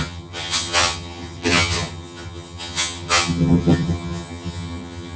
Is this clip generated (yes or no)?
yes